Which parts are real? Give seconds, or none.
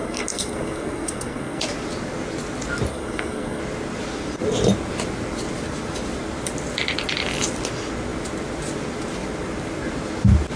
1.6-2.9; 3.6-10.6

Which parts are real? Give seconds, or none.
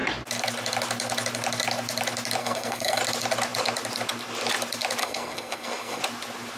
0.0-2.4; 3.0-5.0; 6.0-6.6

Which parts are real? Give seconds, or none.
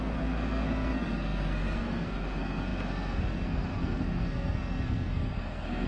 none